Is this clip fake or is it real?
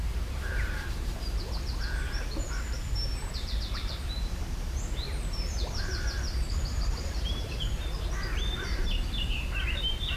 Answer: fake